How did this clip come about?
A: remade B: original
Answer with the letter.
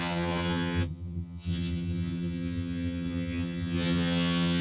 A